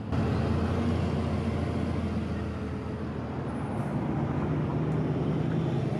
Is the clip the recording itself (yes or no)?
yes